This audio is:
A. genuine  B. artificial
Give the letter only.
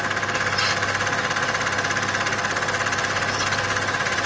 A